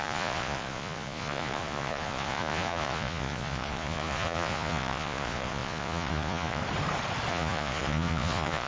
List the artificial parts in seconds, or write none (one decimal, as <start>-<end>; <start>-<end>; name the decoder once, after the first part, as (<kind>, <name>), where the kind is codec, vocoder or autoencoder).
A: 0.0-6.6 (vocoder, Vocos); 7.3-8.7